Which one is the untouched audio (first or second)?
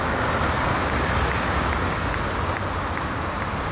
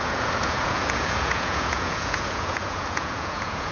first